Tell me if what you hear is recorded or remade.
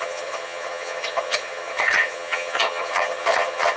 remade